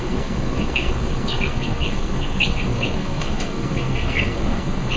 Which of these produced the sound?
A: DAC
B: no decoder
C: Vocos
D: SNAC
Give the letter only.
D